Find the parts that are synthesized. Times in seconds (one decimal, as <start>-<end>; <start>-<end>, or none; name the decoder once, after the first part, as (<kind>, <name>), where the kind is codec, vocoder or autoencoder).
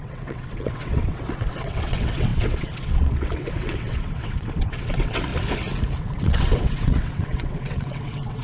0.0-5.3 (vocoder, WaveNeXt); 6.0-8.4